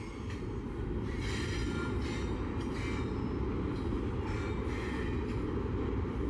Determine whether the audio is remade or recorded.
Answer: recorded